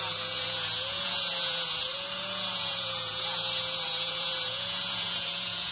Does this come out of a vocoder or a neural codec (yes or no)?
yes